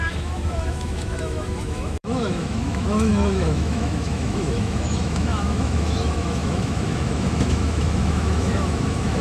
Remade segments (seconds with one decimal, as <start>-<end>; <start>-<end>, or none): 0.0-9.2